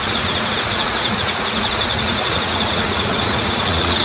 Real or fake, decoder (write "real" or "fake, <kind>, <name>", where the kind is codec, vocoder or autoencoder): fake, vocoder, Vocos